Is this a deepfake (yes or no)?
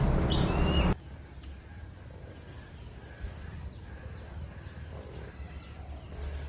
no